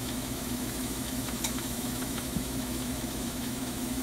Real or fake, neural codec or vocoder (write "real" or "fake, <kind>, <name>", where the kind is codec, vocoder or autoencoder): fake, autoencoder, DAC-VAE